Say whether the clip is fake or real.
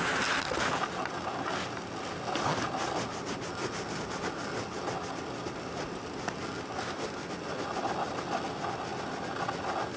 real